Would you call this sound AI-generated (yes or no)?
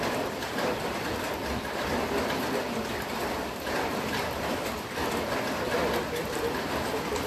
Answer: no